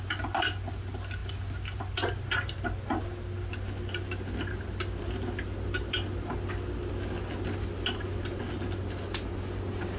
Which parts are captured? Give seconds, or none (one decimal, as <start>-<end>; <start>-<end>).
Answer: 0.0-10.0